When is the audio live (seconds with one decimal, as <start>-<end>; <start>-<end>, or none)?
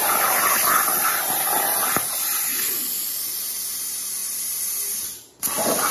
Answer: 0.0-4.2; 5.4-5.9